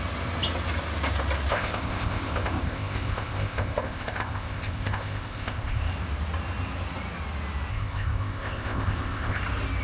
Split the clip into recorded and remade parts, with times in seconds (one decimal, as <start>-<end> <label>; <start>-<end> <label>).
0.0-1.5 recorded; 1.5-5.9 remade; 5.9-7.7 recorded; 7.7-9.4 remade; 9.4-9.8 recorded